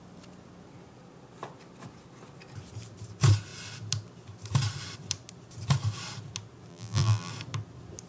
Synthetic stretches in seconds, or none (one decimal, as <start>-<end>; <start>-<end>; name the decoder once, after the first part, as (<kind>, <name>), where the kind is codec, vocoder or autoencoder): 6.7-7.3 (vocoder, BigVGAN v2)